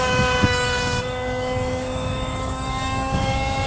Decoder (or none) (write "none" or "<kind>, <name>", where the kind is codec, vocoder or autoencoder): codec, DAC